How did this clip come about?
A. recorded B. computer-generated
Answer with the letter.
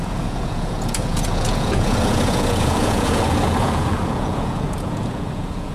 B